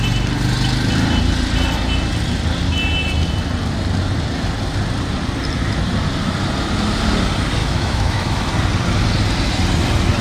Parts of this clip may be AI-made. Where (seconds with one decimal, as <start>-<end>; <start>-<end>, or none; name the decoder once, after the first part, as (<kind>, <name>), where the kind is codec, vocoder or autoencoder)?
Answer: 7.6-8.5 (autoencoder, DAC-VAE)